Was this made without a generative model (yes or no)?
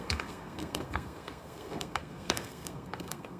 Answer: no